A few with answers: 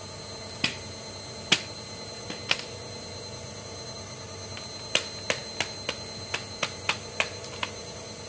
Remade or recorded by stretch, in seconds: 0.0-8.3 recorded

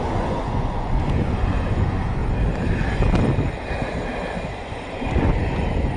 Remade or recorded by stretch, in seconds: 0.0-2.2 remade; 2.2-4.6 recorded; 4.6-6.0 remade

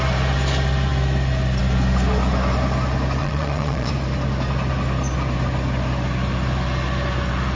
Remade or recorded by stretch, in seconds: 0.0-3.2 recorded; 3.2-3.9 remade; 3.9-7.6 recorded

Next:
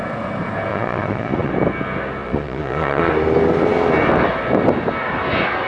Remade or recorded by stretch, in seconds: 0.0-0.7 recorded; 0.7-1.5 remade; 1.5-2.2 recorded; 2.2-3.1 remade; 3.1-5.7 recorded

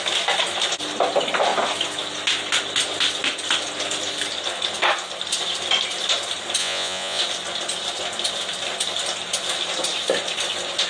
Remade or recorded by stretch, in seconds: 0.0-6.6 recorded; 6.6-7.2 remade; 7.2-10.9 recorded

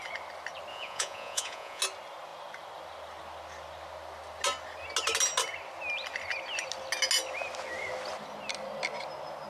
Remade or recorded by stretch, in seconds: 0.0-0.7 recorded; 0.7-1.8 remade; 1.8-9.5 recorded

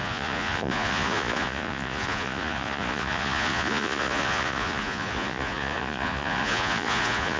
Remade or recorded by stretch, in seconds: 0.0-7.4 remade